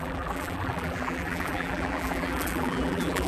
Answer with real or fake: fake